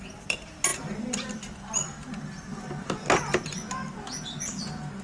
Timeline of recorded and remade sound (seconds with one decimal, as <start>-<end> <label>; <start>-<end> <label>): 0.0-5.0 recorded